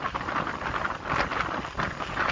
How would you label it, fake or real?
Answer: real